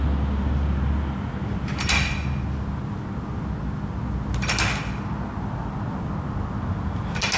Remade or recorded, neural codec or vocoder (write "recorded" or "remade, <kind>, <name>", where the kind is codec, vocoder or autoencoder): recorded